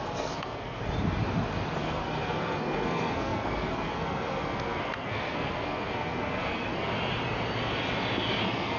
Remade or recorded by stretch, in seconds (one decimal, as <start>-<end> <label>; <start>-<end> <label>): 0.0-0.8 remade; 0.8-1.8 recorded; 1.8-6.9 remade; 6.9-8.4 recorded; 8.4-8.8 remade